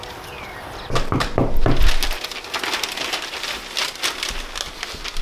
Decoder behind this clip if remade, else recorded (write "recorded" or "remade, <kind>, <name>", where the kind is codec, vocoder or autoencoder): recorded